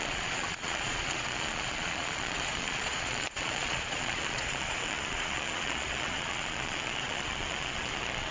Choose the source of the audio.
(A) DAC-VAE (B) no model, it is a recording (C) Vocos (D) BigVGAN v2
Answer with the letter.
C